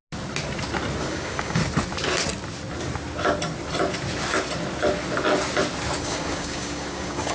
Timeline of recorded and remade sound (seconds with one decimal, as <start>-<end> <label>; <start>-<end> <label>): 0.0-1.0 recorded; 1.0-1.6 remade; 1.6-6.0 recorded; 6.0-7.3 remade